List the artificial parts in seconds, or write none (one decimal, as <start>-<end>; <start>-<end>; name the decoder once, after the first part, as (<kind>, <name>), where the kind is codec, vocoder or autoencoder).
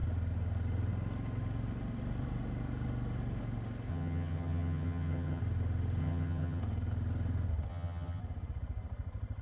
3.9-5.4 (vocoder, HiFi-GAN); 6.0-6.6; 7.7-8.2